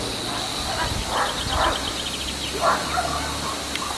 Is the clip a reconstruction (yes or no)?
no